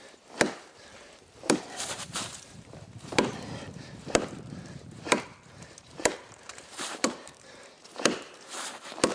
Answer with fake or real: fake